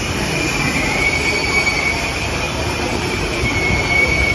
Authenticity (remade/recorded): remade